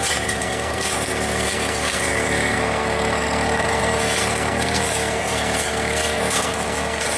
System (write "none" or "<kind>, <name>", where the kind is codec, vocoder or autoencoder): codec, SNAC